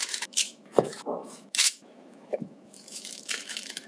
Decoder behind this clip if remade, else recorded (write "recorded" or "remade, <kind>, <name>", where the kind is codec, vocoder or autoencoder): remade, autoencoder, DAC-VAE